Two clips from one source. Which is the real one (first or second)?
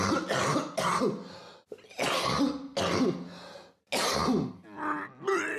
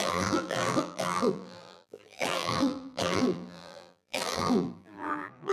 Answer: first